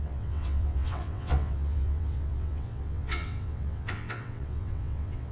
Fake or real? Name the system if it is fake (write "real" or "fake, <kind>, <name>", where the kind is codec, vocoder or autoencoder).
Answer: fake, vocoder, WaveNeXt